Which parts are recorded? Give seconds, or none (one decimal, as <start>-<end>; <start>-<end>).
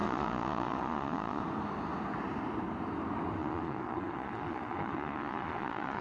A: 1.4-3.4